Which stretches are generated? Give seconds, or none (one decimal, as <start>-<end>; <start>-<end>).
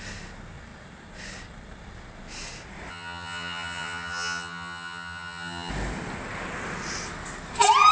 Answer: 2.9-5.7